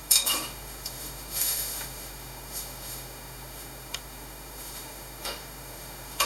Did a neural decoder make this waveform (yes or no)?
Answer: yes